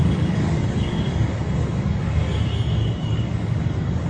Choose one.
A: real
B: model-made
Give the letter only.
B